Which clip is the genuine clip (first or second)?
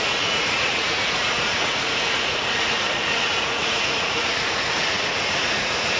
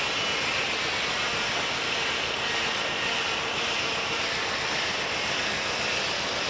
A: second